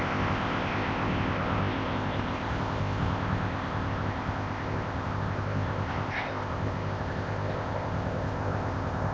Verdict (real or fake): fake